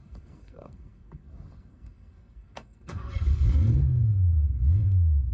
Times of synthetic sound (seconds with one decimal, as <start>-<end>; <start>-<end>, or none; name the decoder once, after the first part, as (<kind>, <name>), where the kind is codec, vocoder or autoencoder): 0.0-5.3 (codec, SNAC)